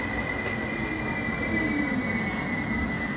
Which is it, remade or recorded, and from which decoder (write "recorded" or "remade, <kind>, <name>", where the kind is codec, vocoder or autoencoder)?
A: recorded